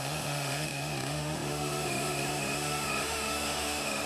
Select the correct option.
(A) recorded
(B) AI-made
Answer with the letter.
B